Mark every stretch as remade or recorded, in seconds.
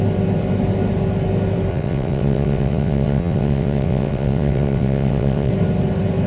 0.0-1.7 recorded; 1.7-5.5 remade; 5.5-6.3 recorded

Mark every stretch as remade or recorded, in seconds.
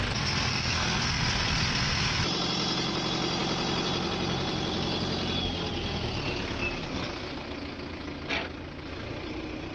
0.0-0.5 recorded; 0.5-1.2 remade; 1.2-9.7 recorded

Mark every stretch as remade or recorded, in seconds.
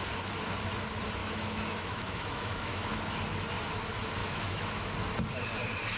0.0-1.2 recorded; 1.2-3.0 remade; 3.0-4.2 recorded; 4.2-4.9 remade; 4.9-6.0 recorded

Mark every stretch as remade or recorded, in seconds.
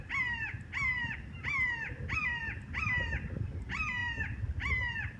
0.0-5.2 recorded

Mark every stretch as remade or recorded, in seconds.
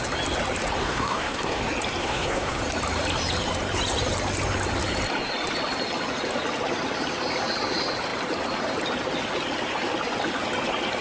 0.0-0.8 recorded; 0.8-1.6 remade; 1.6-2.0 recorded; 2.0-2.6 remade; 2.6-11.0 recorded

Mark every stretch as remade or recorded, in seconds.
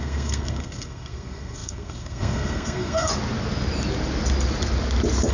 0.0-3.1 remade; 3.1-5.3 recorded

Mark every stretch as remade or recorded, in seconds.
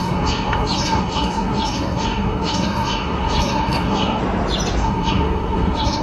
0.0-4.2 remade; 4.2-4.8 recorded; 4.8-6.0 remade